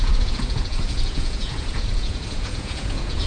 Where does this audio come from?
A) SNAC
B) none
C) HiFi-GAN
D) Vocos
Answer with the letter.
D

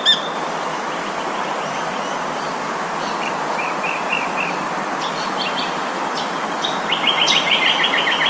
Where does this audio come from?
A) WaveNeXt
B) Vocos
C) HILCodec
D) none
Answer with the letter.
D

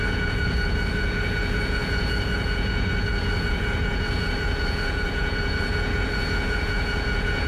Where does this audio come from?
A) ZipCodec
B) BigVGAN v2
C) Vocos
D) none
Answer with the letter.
C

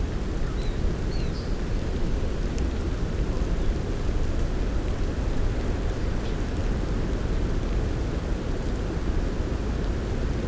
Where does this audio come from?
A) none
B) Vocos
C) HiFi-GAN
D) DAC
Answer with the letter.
A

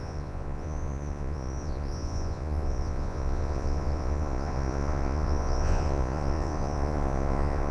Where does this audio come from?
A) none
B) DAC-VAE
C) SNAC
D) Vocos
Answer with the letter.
D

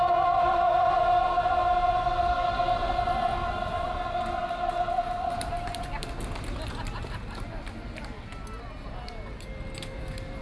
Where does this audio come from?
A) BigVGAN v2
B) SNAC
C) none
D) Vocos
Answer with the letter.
C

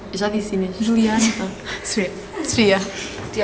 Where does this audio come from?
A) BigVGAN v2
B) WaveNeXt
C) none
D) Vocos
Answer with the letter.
C